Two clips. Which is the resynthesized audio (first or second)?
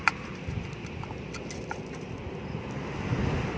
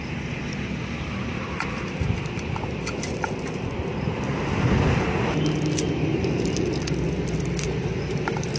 second